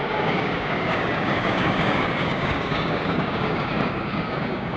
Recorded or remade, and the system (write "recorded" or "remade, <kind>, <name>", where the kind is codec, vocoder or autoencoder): remade, codec, DAC